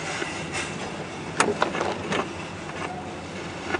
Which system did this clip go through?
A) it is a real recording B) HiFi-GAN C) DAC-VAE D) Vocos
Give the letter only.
A